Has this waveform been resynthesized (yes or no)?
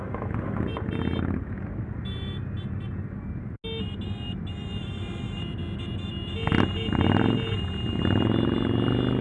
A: no